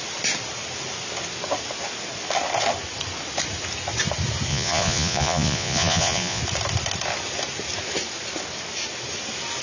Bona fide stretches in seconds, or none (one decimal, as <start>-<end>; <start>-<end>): 0.0-4.5; 6.4-9.6

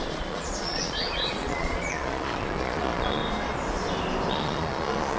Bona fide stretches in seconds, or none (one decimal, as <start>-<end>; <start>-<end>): 3.2-4.3

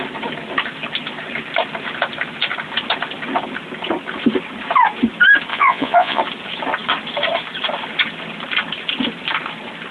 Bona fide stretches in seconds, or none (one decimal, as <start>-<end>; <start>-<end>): 0.0-5.5; 6.2-9.9

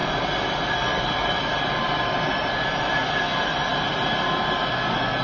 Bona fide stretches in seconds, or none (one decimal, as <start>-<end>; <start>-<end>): 0.0-5.2

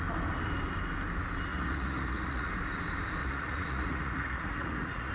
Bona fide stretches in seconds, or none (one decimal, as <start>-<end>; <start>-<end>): 0.0-1.5; 2.5-3.2

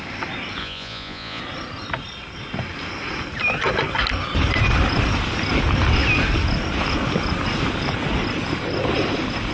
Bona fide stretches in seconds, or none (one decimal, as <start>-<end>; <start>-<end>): 0.0-0.6; 1.4-9.5

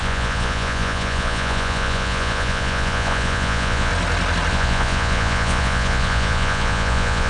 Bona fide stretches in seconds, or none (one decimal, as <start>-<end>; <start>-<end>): 3.9-4.5

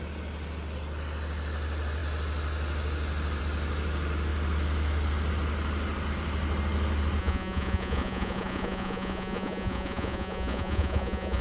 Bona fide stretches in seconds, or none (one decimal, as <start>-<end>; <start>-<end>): 0.0-7.2